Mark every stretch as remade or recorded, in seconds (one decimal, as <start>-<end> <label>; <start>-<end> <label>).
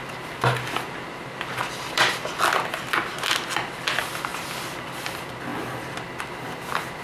0.0-1.6 recorded; 1.6-2.3 remade; 2.3-7.0 recorded